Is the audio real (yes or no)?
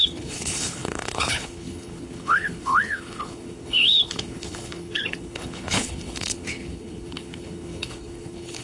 no